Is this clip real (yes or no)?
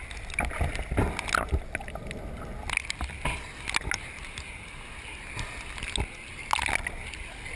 yes